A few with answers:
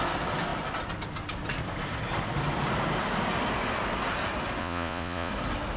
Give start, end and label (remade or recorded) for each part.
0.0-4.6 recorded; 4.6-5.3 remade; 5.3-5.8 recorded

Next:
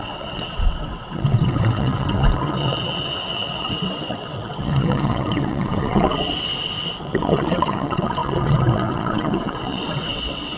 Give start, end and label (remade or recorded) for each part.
0.0-6.5 remade; 6.5-7.0 recorded; 7.0-10.6 remade

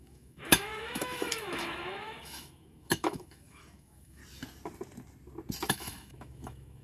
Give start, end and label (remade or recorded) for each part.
0.0-4.2 remade; 4.2-5.7 recorded; 5.7-6.8 remade

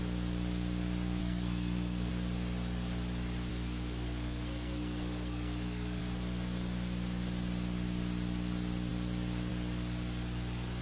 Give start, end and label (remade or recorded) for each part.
0.0-1.2 recorded; 1.2-2.1 remade; 2.1-3.5 recorded; 3.5-6.0 remade; 6.0-10.8 recorded

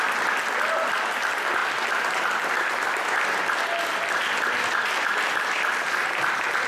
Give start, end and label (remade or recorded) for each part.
0.0-6.7 recorded